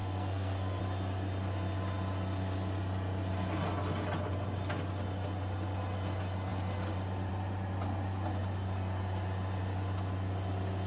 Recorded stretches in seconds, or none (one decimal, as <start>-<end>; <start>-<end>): 0.8-10.9